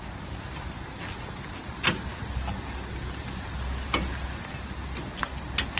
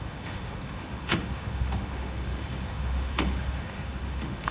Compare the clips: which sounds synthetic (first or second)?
second